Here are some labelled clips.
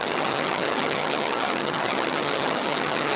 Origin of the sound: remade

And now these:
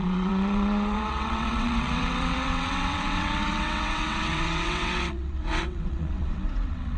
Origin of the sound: remade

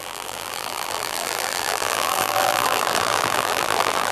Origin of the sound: remade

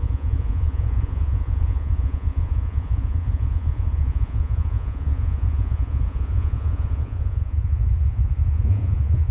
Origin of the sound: remade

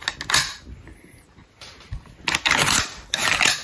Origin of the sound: recorded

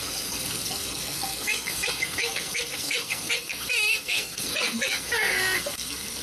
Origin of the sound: remade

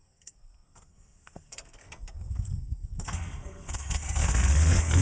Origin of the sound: remade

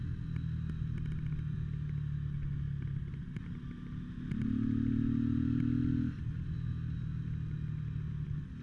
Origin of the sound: recorded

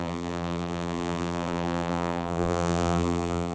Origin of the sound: remade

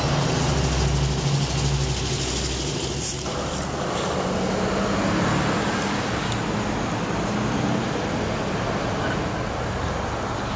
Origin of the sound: recorded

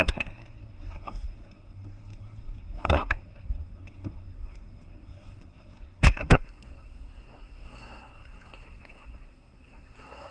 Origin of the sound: remade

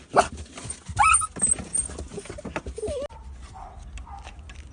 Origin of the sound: recorded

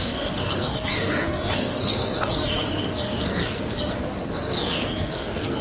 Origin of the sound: remade